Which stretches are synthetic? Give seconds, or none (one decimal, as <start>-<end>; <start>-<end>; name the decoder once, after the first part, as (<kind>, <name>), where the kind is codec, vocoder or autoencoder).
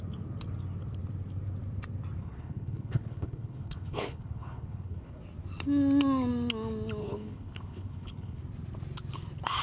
2.2-5.2 (codec, HILCodec); 7.0-8.4